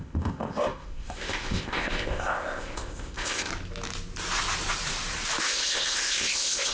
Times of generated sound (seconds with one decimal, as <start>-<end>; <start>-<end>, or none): 0.0-3.5; 5.4-6.7